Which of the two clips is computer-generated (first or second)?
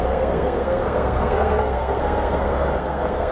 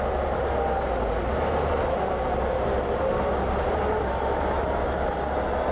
first